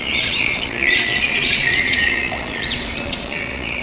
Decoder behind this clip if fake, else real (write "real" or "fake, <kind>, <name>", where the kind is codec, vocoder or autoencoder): fake, vocoder, Vocos